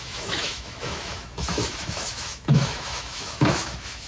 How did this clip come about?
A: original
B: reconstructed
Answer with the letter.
B